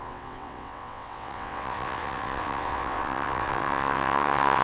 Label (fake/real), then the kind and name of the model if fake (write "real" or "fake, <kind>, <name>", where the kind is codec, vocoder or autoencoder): fake, vocoder, WaveNeXt